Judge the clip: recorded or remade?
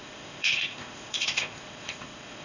remade